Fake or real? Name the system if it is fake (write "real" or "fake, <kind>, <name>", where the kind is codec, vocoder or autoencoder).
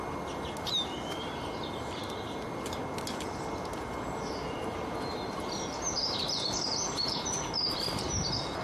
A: real